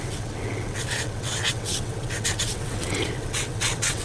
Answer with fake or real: fake